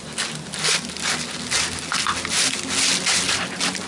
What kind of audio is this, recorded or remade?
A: recorded